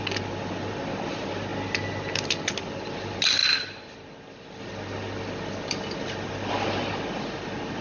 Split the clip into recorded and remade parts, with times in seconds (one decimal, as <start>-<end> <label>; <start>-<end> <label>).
0.0-7.8 recorded

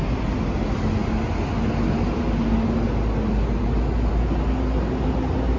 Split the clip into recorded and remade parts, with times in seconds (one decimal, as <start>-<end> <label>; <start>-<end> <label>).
0.0-5.6 recorded

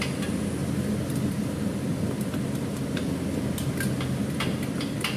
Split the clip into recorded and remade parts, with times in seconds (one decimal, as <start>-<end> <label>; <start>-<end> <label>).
0.0-5.2 recorded

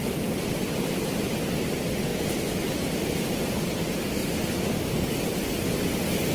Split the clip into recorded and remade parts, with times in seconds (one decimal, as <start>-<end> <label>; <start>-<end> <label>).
0.0-6.3 recorded

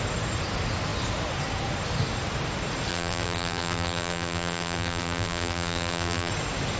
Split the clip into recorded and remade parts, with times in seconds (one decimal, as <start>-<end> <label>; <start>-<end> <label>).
0.0-2.9 recorded; 2.9-6.3 remade; 6.3-6.8 recorded

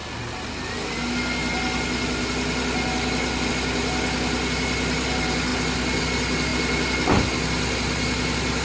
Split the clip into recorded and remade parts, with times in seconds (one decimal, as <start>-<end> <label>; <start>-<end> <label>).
0.0-8.6 recorded

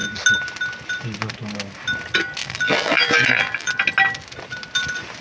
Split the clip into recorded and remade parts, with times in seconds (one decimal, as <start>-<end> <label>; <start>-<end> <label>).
0.0-2.4 recorded; 2.4-3.7 remade; 3.7-5.2 recorded

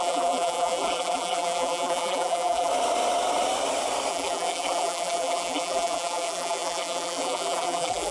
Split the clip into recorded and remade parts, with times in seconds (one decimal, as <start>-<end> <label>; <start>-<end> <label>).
0.0-2.7 remade; 2.7-4.1 recorded; 4.1-8.1 remade